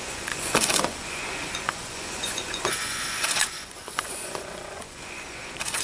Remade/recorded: remade